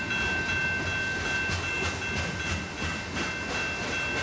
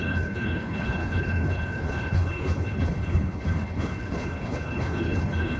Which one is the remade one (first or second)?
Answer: second